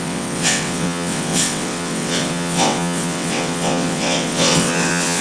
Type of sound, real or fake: fake